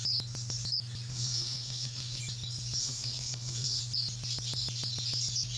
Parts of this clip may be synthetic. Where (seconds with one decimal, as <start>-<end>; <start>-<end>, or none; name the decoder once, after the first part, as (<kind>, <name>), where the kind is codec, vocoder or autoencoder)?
1.1-2.2 (codec, SNAC); 2.8-3.8